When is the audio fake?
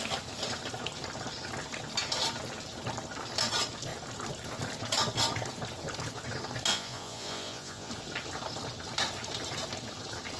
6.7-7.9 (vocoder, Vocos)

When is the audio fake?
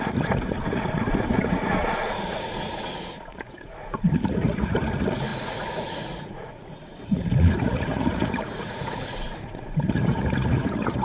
0.0-11.0 (vocoder, Vocos)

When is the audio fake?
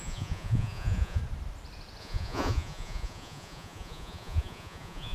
0.0-1.2 (vocoder, Vocos); 2.0-5.1